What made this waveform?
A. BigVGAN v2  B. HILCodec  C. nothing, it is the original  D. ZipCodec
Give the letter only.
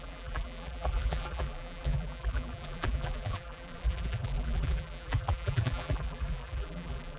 A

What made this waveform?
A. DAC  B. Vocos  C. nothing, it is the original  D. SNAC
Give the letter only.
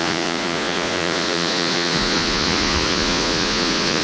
B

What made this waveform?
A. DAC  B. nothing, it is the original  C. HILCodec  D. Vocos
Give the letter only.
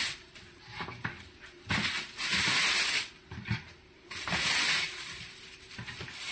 B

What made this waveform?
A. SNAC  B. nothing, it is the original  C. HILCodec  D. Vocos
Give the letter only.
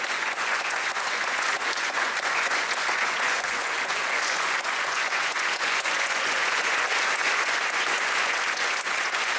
D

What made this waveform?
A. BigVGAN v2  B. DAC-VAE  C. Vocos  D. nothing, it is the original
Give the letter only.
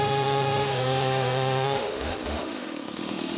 B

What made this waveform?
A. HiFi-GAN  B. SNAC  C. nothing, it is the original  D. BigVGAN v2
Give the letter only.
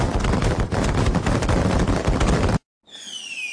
C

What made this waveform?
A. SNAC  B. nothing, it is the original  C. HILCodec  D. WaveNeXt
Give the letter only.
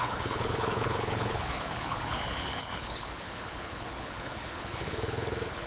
C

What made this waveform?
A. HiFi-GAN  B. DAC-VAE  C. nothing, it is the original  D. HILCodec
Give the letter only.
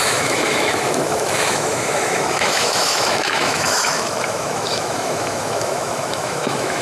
B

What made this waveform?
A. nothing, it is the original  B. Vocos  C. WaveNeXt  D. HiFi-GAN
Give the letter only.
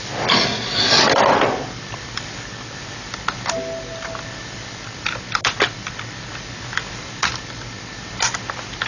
A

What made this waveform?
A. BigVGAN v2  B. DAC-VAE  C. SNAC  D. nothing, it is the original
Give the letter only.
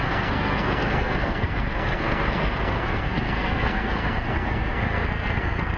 C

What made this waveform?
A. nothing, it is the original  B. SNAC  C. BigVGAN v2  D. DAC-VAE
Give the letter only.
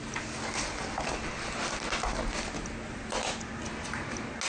A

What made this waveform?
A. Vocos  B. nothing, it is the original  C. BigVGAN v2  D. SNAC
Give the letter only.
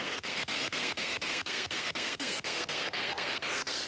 D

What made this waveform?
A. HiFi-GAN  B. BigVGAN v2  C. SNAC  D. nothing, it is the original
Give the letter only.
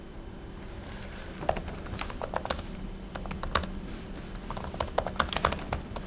D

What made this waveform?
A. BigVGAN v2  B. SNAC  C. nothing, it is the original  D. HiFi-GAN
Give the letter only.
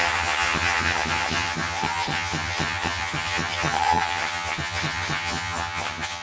D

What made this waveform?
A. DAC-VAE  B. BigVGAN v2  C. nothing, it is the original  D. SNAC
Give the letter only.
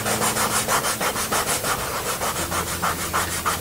C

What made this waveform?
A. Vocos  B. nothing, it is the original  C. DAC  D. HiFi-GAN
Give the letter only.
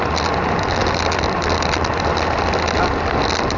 B